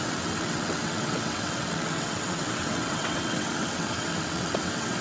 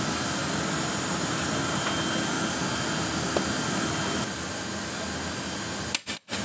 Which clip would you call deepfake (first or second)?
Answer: first